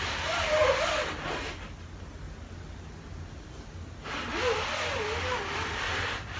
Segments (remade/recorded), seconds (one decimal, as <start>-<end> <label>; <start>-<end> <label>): 0.0-6.4 recorded